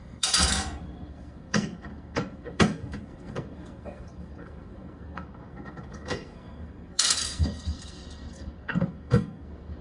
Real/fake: fake